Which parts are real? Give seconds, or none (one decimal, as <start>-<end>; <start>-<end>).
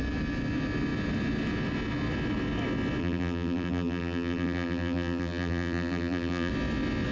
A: 0.0-3.0; 6.5-7.1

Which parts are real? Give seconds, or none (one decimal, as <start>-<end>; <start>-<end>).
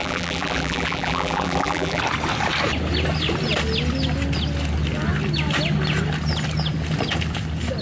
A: 2.0-7.8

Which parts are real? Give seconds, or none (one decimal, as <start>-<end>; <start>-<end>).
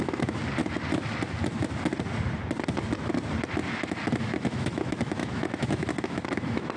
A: 0.4-4.2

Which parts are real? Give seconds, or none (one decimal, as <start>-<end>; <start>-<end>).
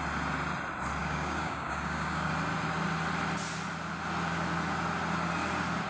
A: 0.0-1.0; 2.3-5.9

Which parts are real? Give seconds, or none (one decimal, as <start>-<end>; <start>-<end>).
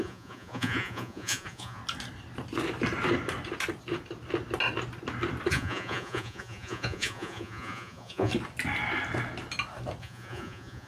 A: 1.8-5.5; 8.3-10.0